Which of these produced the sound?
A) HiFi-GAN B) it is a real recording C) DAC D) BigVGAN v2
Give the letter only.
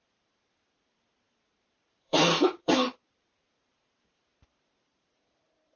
D